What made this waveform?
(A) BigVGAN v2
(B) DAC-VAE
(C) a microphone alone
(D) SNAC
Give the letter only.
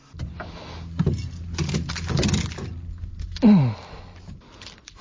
C